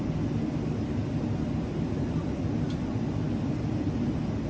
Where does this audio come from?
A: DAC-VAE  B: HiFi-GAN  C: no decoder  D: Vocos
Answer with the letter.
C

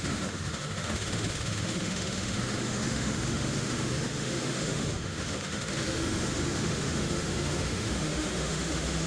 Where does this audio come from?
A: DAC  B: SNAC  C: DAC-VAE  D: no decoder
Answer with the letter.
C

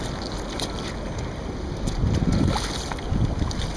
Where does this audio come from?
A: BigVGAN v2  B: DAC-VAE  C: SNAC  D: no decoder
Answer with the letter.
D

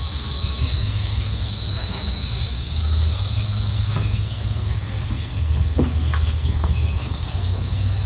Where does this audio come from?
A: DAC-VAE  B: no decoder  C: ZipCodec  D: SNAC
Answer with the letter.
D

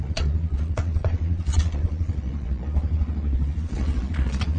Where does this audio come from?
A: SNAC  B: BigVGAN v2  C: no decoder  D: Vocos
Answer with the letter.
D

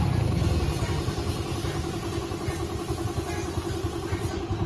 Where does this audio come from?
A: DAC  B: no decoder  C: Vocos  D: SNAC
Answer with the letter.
B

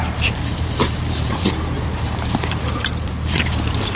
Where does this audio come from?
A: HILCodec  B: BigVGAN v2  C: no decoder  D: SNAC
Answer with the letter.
B